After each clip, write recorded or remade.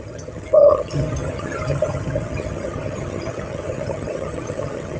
remade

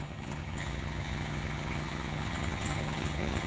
remade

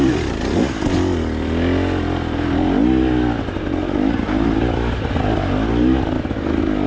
recorded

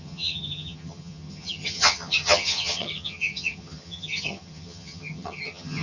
remade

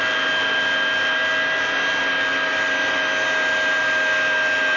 recorded